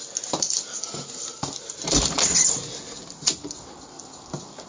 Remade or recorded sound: recorded